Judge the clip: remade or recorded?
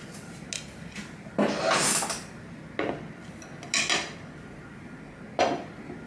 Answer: recorded